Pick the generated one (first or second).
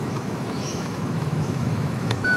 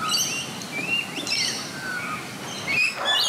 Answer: first